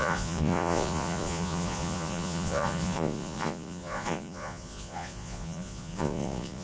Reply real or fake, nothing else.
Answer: fake